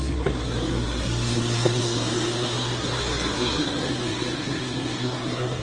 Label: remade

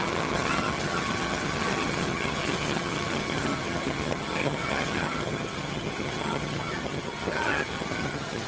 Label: remade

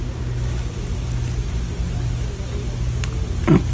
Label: recorded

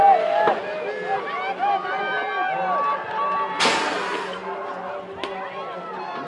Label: recorded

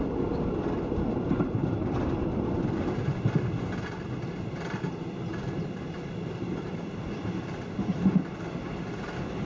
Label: recorded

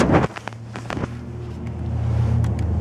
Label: recorded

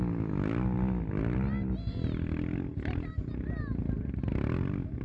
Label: recorded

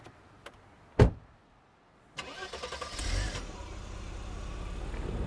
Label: recorded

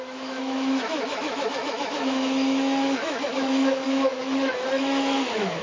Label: remade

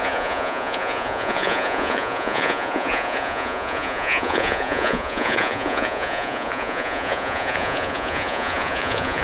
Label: remade